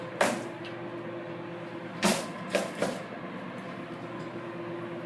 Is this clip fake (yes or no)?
no